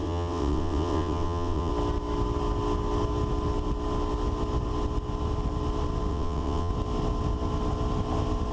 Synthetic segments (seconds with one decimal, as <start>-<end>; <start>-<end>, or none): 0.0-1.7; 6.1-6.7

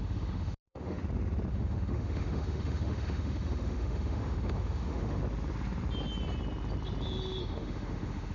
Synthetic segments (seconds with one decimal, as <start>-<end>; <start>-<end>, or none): 0.0-1.0; 1.5-5.2; 7.4-8.3

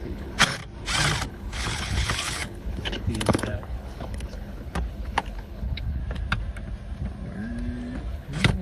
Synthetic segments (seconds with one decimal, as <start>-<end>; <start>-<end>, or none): 0.0-0.6; 1.3-6.0; 8.1-8.6